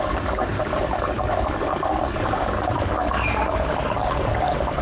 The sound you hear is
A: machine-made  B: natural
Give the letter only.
A